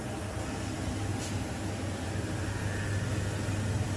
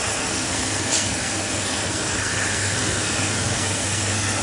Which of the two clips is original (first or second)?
first